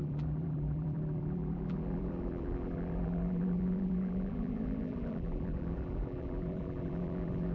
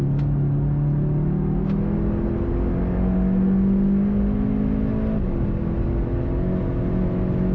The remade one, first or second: first